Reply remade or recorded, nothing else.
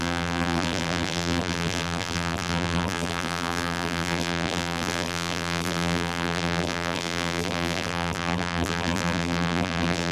remade